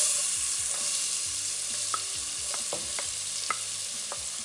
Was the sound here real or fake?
real